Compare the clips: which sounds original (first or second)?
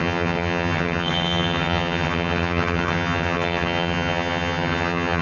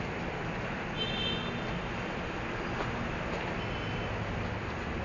second